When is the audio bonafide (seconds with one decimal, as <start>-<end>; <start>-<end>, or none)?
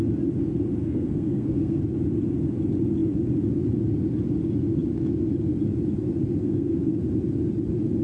0.0-0.8; 1.8-6.4; 7.0-8.0